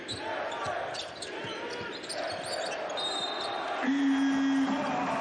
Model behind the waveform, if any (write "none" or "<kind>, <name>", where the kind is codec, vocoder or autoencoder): none